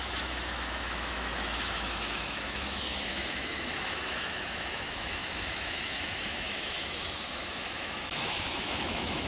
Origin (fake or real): fake